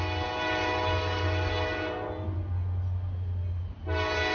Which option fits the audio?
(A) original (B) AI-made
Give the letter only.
A